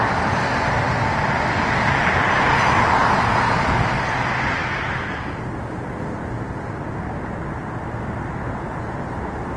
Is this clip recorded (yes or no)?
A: yes